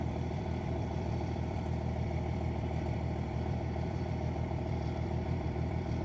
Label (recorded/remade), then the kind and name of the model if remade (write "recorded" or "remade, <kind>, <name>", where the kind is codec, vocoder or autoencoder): remade, vocoder, BigVGAN v2